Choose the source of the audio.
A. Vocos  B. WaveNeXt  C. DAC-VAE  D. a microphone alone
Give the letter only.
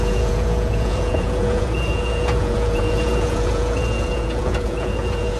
A